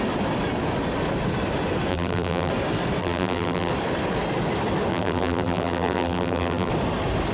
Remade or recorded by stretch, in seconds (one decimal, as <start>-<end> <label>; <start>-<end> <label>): 0.0-1.9 recorded; 1.9-2.5 remade; 2.5-3.0 recorded; 3.0-3.7 remade; 3.7-4.9 recorded; 4.9-6.7 remade; 6.7-7.3 recorded